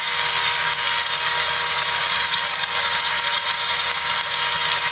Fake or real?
fake